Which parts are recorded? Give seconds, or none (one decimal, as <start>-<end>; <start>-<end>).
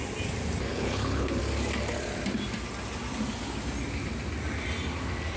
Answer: 0.0-0.7; 1.4-5.4